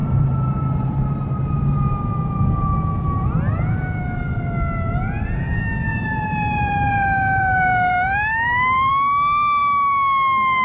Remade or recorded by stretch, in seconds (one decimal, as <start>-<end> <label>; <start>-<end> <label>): 0.0-2.0 remade; 2.0-5.9 recorded; 5.9-8.9 remade; 8.9-10.6 recorded